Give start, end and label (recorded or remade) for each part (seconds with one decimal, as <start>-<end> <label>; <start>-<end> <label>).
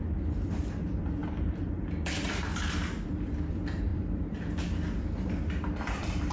0.0-6.3 remade